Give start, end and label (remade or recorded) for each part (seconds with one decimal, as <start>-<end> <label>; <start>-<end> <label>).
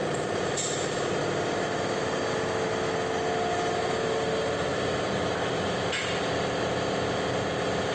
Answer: 0.0-1.2 remade; 1.2-7.9 recorded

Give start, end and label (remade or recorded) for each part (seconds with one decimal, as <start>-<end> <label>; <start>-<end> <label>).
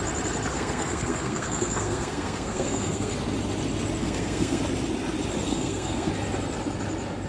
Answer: 0.0-0.5 recorded; 0.5-3.1 remade; 3.1-4.0 recorded; 4.0-4.6 remade; 4.6-5.5 recorded; 5.5-6.1 remade; 6.1-7.3 recorded